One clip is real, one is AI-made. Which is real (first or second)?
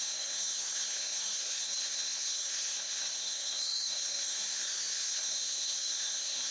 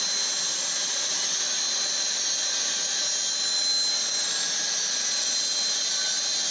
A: second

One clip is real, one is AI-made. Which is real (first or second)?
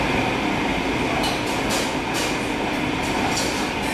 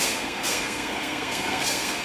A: first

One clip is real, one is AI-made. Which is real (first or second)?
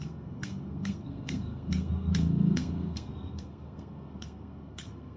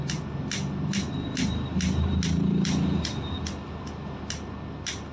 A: second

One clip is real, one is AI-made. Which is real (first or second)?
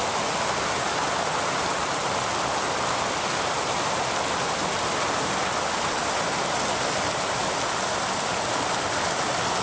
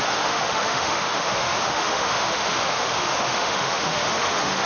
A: first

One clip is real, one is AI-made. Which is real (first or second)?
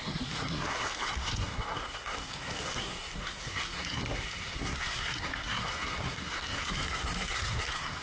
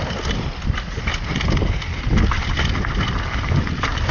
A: second